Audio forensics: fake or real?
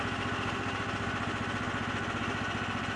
real